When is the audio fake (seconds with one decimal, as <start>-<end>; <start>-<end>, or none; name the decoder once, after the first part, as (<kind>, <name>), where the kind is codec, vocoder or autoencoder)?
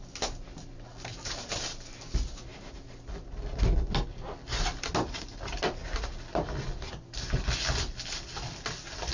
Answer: none